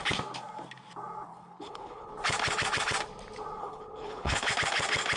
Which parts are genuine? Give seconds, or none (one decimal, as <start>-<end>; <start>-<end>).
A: 0.0-1.3; 2.1-3.6; 4.5-5.2